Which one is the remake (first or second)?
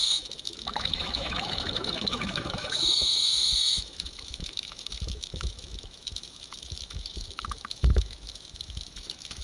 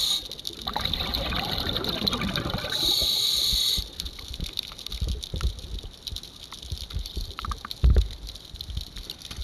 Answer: first